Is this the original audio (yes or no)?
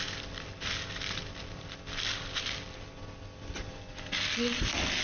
yes